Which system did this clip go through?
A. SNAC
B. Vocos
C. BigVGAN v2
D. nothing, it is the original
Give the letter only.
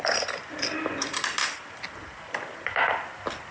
D